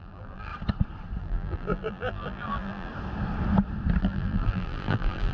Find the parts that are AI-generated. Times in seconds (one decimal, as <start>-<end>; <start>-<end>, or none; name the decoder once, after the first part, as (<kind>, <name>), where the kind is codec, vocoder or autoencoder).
0.0-0.5 (vocoder, BigVGAN v2); 1.2-2.9; 4.0-5.3